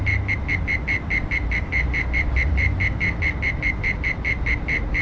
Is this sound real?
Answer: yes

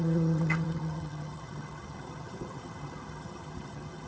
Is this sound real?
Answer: no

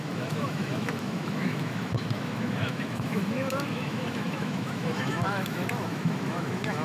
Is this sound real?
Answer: no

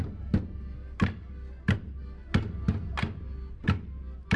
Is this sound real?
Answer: yes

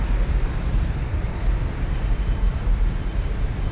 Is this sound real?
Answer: no